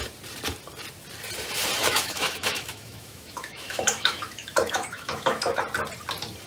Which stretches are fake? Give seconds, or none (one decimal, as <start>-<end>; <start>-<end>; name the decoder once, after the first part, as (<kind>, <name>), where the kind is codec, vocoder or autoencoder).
1.8-5.6 (autoencoder, DAC-VAE)